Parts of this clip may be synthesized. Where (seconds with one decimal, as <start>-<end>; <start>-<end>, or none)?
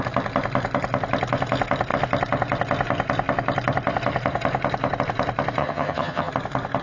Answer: 5.6-6.3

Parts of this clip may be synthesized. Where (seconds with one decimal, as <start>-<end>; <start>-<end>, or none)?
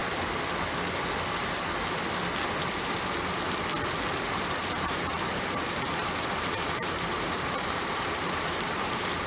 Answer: 4.1-9.3